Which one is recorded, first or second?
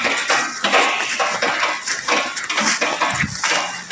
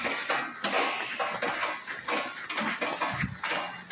second